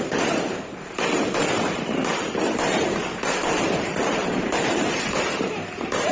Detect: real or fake fake